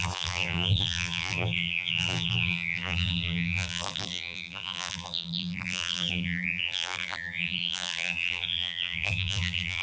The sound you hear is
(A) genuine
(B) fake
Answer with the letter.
B